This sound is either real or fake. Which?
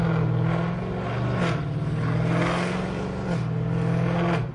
real